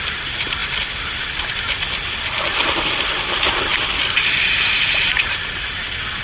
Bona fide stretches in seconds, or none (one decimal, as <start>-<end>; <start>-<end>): 0.0-6.2

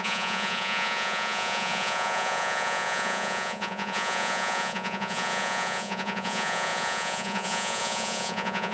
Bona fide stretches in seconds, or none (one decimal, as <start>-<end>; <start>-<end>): none

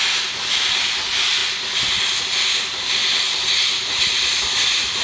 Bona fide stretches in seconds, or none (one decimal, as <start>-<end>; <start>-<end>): 0.0-5.0

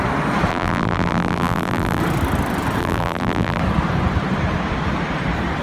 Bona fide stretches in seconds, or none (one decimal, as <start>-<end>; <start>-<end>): 0.0-0.5; 2.0-2.8; 3.6-5.6

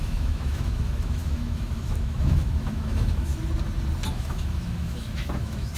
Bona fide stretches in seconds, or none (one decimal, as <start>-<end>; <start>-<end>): 3.3-4.1

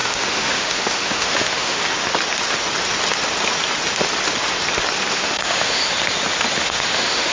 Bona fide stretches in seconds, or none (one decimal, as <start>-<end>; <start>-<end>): 1.8-5.1; 5.8-6.6

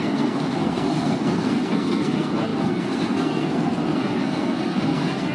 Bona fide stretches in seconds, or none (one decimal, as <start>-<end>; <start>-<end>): none